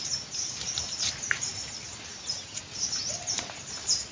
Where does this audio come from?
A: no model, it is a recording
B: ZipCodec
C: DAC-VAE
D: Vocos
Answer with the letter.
A